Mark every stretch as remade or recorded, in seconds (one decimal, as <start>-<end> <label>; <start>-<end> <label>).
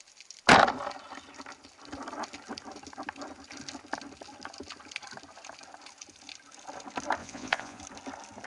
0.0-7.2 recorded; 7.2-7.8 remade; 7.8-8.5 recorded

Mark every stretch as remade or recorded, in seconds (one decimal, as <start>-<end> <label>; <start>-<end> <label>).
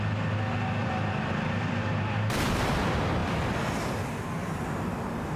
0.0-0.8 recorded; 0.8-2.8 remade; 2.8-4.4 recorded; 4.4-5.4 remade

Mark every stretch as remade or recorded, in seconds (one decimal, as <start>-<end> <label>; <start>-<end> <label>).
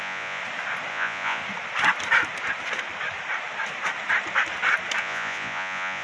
0.0-0.4 remade; 0.4-0.9 recorded; 0.9-1.4 remade; 1.4-5.0 recorded; 5.0-6.0 remade